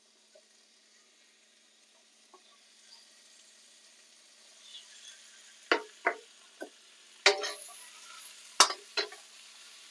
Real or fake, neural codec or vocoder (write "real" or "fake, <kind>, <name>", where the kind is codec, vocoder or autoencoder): real